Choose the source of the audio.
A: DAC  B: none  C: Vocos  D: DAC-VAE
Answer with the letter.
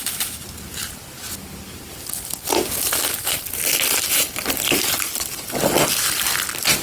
B